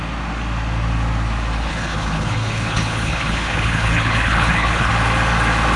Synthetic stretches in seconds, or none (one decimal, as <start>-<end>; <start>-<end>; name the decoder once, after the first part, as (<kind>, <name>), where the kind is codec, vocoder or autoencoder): 1.7-4.9 (codec, HILCodec)